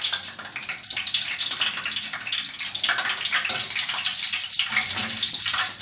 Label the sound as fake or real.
real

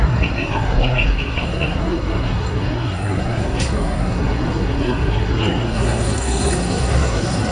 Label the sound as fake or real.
fake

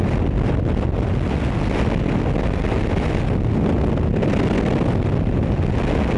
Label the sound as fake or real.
real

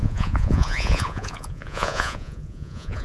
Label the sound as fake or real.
fake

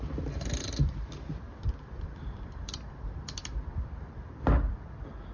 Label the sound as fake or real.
fake